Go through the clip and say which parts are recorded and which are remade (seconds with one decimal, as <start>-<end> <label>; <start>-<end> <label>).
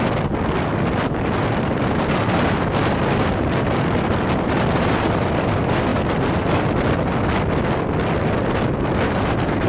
0.0-5.9 remade; 5.9-8.1 recorded; 8.1-9.7 remade